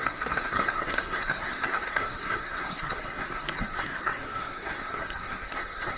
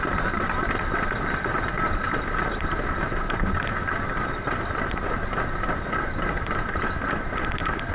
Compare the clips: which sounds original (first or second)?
second